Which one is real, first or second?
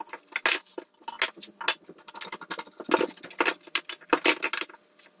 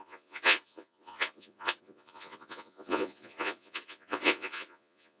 first